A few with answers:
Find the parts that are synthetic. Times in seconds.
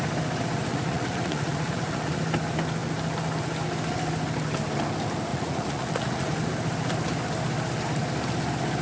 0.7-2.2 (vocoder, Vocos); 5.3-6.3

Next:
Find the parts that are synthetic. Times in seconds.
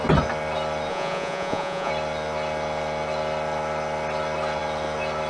0.9-1.9 (vocoder, Vocos)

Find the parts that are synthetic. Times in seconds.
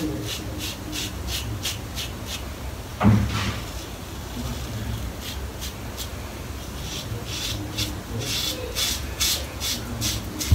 9.0-9.6 (vocoder, Vocos)